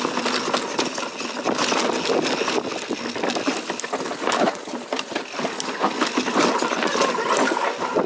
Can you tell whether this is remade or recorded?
recorded